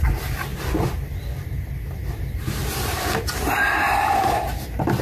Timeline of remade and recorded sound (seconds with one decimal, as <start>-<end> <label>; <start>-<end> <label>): 0.0-0.5 remade; 0.5-1.2 recorded; 1.2-5.0 remade

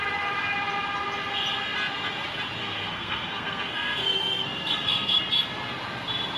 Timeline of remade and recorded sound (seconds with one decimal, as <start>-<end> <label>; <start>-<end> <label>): 0.0-2.6 recorded; 2.6-5.2 remade; 5.2-6.4 recorded